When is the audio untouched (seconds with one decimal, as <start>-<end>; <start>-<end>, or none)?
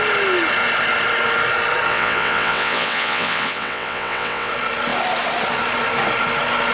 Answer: 0.0-1.9; 4.5-6.7